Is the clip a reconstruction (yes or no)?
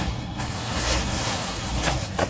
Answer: yes